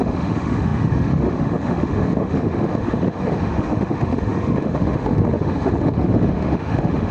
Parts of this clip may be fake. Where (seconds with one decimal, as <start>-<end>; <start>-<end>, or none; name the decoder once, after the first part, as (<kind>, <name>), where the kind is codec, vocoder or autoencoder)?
0.0-7.1 (autoencoder, DAC-VAE)